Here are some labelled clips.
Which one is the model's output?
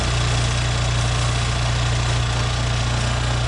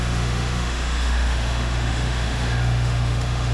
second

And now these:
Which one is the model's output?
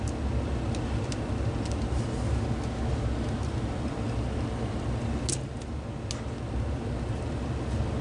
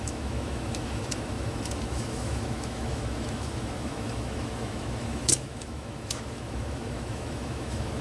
second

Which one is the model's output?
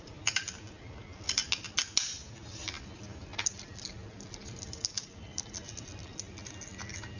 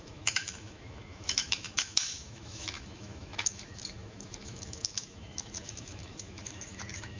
second